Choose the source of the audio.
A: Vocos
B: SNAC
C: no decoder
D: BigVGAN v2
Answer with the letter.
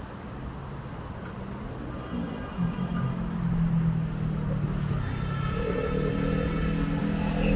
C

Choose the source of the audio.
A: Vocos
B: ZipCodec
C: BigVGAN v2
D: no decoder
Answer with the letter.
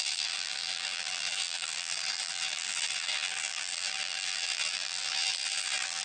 C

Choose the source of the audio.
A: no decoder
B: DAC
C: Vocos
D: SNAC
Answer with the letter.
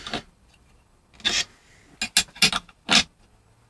A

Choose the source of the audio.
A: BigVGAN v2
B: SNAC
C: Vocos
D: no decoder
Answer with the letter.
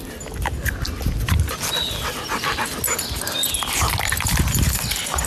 D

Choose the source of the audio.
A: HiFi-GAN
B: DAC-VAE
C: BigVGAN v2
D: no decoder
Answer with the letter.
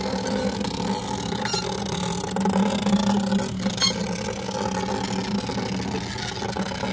D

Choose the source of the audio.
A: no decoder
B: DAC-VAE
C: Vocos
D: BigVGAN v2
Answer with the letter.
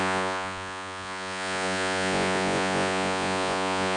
C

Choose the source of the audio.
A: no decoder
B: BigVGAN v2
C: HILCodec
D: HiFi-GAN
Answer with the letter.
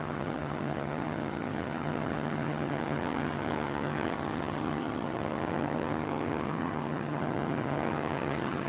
D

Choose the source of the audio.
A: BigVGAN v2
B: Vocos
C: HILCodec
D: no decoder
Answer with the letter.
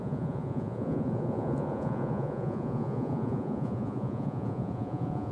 B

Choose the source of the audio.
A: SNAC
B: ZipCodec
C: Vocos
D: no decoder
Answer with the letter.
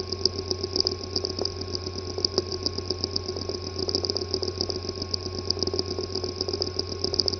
D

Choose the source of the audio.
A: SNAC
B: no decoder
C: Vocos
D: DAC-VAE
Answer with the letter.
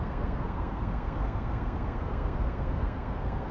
A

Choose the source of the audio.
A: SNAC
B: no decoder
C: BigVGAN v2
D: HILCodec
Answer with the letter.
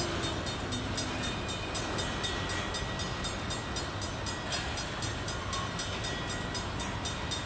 B